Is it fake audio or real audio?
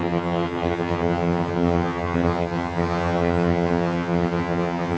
fake